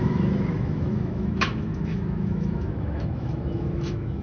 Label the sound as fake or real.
fake